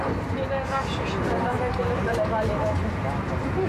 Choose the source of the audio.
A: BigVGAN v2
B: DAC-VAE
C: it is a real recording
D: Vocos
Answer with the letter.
C